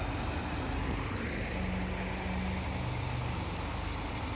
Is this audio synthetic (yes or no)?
no